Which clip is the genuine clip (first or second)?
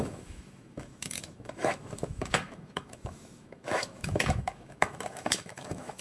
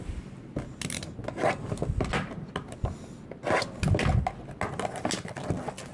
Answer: second